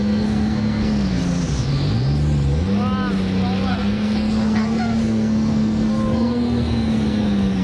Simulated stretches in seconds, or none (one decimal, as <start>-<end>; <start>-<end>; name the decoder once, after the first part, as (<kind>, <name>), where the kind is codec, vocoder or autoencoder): 0.0-1.2 (codec, SNAC); 3.7-7.6